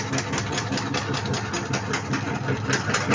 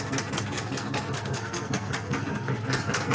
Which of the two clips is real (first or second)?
first